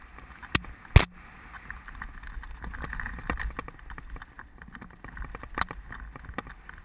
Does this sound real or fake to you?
real